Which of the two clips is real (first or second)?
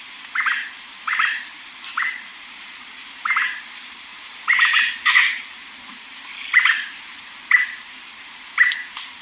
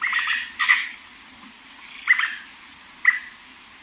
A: second